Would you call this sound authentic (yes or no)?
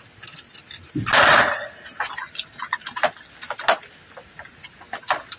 yes